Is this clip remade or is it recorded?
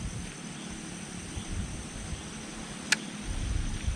recorded